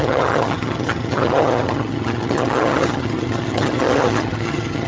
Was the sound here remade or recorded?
remade